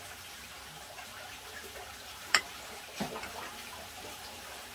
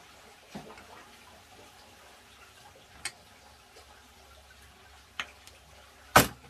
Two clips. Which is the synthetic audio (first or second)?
first